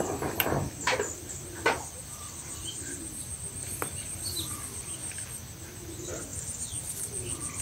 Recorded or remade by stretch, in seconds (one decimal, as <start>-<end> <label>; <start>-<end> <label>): 0.0-6.3 recorded; 6.3-6.9 remade; 6.9-7.6 recorded